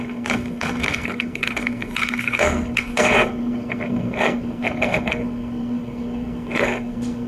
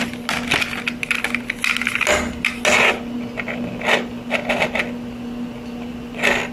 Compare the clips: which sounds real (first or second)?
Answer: second